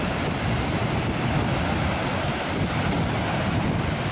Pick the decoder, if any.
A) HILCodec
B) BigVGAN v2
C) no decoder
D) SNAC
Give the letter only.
C